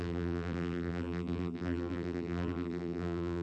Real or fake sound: fake